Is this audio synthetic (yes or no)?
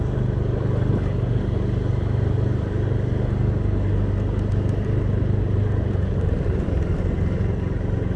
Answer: no